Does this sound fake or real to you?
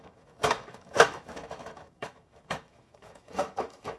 fake